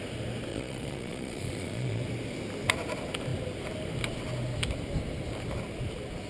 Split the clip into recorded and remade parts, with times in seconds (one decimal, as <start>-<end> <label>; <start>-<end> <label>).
0.0-0.5 recorded; 0.5-2.0 remade; 2.0-6.3 recorded